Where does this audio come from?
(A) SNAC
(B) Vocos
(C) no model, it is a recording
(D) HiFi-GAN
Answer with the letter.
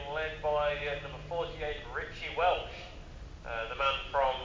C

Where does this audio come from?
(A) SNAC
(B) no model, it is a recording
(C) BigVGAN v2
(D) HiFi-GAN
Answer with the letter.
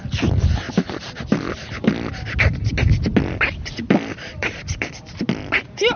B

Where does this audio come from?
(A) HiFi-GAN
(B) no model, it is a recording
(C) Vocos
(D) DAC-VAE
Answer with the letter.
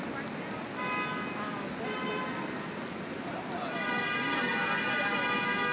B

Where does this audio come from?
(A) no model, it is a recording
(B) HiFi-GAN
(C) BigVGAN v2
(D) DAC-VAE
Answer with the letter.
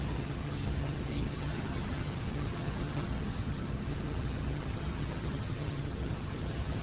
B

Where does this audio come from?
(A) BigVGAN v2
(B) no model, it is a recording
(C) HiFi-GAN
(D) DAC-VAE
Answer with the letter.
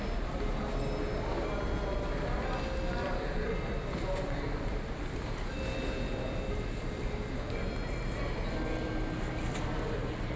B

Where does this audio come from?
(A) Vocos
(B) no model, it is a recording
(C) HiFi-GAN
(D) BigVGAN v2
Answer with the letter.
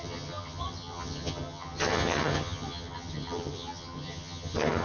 C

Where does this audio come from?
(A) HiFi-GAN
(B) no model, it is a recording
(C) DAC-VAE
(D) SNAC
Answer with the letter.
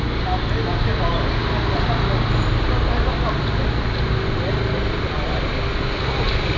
B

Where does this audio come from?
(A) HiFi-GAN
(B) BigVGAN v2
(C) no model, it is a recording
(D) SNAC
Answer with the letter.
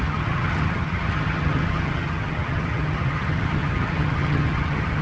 A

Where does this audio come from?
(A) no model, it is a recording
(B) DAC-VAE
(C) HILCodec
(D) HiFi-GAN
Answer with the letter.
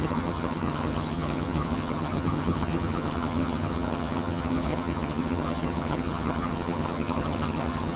D